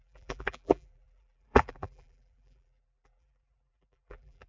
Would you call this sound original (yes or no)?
no